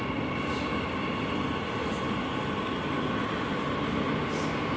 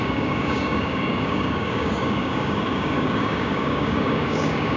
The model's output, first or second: second